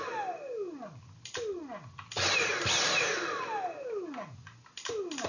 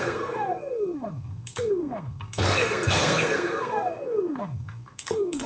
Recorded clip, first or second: first